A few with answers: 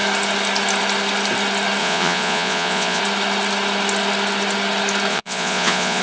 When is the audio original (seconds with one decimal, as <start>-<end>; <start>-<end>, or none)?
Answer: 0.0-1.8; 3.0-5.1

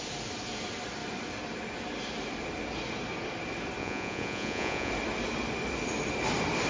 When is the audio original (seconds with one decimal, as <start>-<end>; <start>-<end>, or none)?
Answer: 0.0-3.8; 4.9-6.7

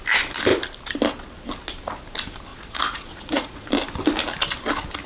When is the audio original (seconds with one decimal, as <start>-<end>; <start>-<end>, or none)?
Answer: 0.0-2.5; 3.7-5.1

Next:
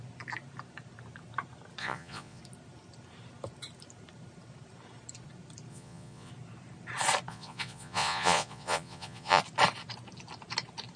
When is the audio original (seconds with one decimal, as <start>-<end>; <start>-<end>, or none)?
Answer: 0.0-1.8; 2.4-5.7; 6.3-7.3; 9.4-11.0